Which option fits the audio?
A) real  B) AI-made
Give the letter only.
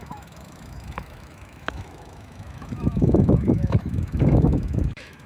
B